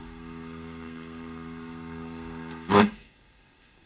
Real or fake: fake